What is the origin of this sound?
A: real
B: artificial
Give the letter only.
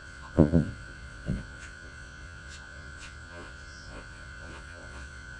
B